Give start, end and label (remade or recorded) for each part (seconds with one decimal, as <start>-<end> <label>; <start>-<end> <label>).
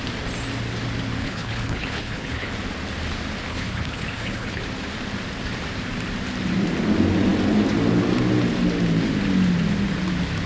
0.0-1.2 recorded; 1.2-2.5 remade; 2.5-3.5 recorded; 3.5-4.6 remade; 4.6-10.5 recorded